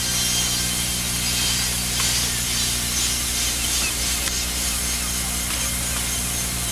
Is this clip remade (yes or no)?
no